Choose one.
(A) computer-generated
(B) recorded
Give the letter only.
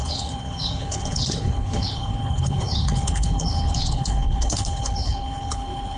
A